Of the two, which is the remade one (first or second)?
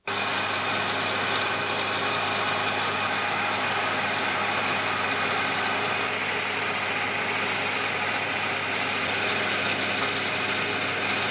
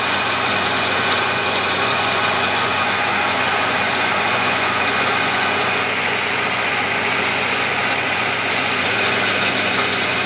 second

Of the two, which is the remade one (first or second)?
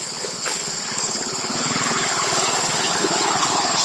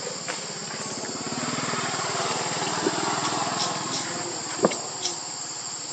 first